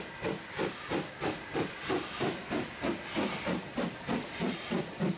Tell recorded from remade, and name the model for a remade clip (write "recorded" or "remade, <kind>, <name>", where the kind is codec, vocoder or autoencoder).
recorded